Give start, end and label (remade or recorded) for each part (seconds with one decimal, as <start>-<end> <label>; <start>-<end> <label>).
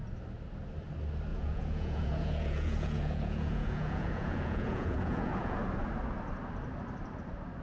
0.0-1.3 recorded; 1.3-5.6 remade; 5.6-7.6 recorded